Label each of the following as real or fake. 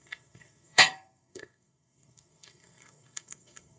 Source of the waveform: fake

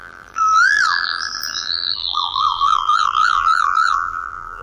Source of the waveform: fake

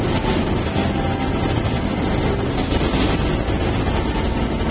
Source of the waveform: real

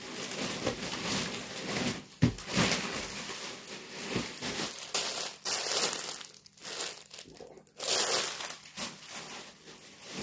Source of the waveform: real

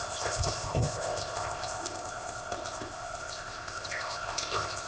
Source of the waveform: fake